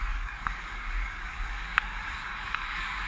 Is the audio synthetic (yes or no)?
yes